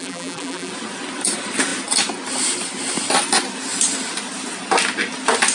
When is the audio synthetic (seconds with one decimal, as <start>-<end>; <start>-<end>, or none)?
0.0-0.7